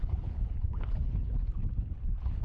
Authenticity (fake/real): fake